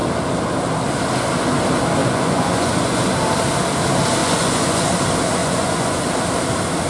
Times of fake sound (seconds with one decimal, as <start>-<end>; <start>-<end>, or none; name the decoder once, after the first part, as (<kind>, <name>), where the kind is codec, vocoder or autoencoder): 2.0-3.0 (vocoder, Vocos); 4.2-4.9; 5.4-6.0